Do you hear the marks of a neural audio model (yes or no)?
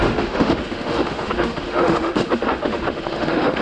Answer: yes